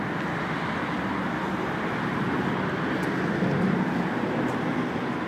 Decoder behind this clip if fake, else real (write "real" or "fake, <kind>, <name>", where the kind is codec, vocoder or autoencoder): real